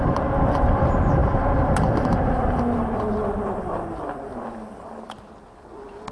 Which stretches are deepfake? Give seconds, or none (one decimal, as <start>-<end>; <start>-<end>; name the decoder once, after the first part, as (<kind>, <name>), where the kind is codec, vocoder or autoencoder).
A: none